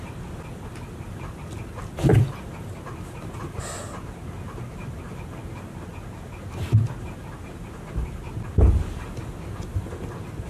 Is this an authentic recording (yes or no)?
yes